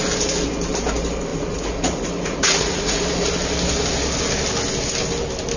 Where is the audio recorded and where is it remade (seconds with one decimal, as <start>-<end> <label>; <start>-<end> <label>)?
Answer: 0.0-1.3 recorded; 1.3-3.0 remade; 3.0-5.6 recorded